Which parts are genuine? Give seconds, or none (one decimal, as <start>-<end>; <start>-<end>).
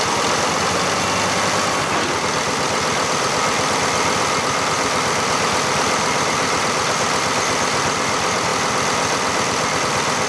0.0-10.3